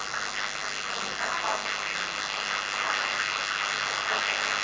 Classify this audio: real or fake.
real